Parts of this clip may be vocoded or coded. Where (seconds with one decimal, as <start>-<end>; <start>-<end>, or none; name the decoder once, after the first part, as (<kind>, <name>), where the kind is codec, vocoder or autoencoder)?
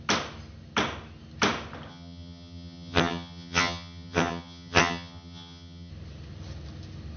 1.9-5.9 (vocoder, HiFi-GAN)